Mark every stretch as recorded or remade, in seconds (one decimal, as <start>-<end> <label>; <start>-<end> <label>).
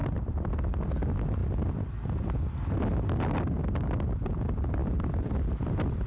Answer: 0.0-0.5 remade; 0.5-4.8 recorded; 4.8-6.1 remade